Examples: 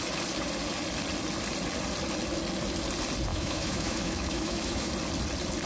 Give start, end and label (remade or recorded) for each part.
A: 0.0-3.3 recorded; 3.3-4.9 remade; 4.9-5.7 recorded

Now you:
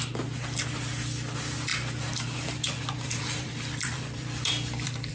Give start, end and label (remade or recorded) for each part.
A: 0.0-1.7 recorded; 1.7-5.1 remade